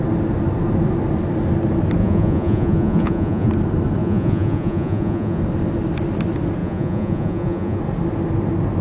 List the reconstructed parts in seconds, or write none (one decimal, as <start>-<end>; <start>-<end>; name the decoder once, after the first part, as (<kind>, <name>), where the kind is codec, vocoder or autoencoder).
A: 2.0-3.5 (vocoder, Vocos); 4.0-5.4; 6.6-7.8